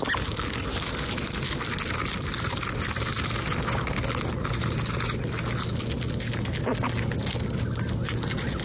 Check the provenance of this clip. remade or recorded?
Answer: recorded